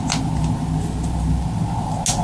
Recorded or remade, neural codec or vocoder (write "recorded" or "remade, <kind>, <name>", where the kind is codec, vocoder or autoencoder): recorded